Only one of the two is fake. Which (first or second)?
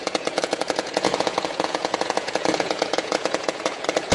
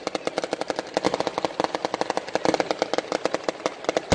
first